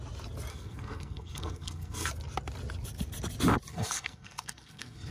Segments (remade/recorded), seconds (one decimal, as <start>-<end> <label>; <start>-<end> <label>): 0.0-0.5 recorded; 0.5-2.1 remade; 2.1-3.7 recorded; 3.7-5.1 remade